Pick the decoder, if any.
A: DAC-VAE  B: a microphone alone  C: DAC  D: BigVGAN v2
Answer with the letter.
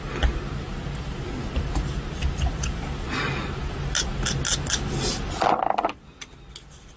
B